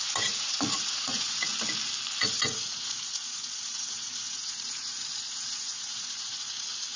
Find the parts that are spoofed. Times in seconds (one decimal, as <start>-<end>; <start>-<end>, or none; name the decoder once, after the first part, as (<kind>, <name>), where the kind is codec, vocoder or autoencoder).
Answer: 0.0-1.5 (vocoder, Vocos); 2.2-7.0